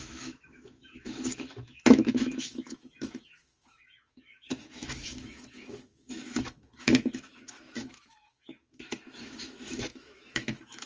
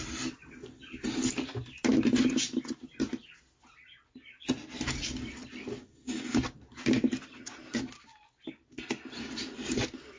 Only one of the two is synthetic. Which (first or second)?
first